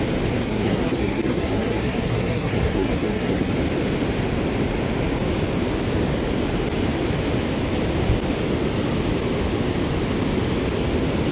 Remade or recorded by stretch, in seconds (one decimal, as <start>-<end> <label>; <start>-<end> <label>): 0.0-0.4 recorded; 0.4-3.5 remade; 3.5-11.3 recorded